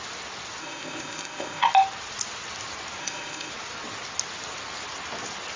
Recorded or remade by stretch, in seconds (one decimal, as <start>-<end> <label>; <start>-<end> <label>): 0.0-0.6 recorded; 0.6-1.7 remade; 1.7-3.0 recorded; 3.0-3.5 remade; 3.5-5.6 recorded